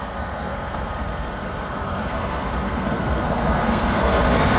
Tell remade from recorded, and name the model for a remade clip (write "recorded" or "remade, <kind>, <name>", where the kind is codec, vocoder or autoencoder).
remade, codec, SNAC